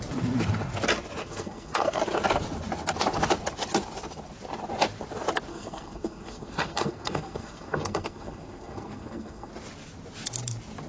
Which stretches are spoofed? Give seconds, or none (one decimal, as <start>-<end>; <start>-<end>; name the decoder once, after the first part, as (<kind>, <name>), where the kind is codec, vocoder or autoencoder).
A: 1.2-2.0 (codec, SNAC); 5.5-9.5